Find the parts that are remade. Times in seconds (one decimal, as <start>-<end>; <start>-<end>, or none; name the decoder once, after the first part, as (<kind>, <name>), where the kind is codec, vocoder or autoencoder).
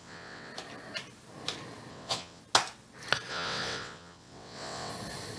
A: 0.0-0.5 (vocoder, WaveNeXt); 1.9-2.4; 3.3-4.9